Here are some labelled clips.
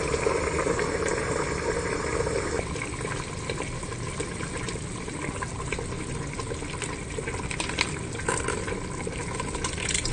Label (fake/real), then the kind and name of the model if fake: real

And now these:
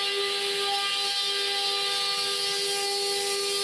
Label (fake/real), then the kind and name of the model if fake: real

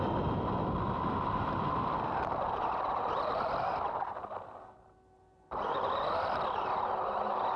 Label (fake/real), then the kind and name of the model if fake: real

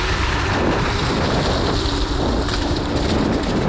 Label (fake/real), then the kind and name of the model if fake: real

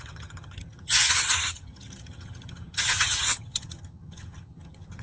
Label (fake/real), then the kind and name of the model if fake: fake, vocoder, HiFi-GAN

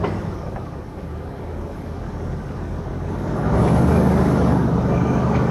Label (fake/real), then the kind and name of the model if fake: fake, codec, DAC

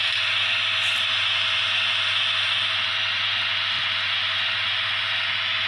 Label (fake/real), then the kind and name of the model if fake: real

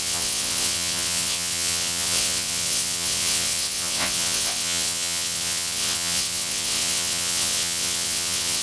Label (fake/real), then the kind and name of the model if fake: fake, vocoder, WaveNeXt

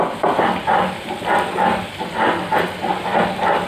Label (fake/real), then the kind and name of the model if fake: real